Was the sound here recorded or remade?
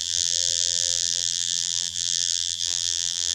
remade